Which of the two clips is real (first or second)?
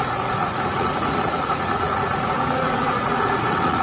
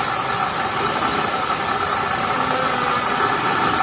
second